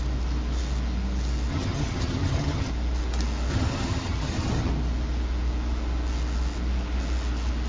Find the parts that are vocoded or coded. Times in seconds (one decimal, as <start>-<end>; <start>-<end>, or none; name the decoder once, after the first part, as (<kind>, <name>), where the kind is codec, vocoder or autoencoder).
1.5-2.7 (vocoder, HiFi-GAN); 3.5-4.7